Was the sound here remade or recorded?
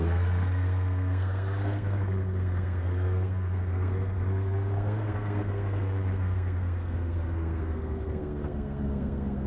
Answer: remade